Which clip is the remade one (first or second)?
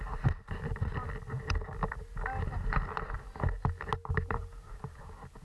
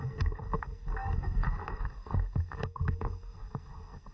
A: second